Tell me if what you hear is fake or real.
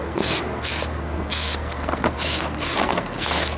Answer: fake